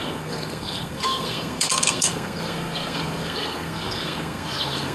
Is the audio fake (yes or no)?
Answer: yes